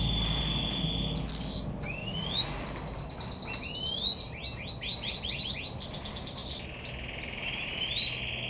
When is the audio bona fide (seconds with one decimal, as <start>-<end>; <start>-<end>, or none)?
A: 0.0-2.0; 2.6-8.5